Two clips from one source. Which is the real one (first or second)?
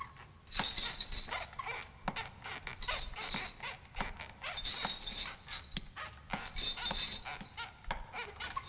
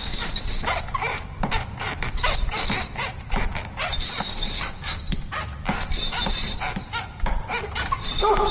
first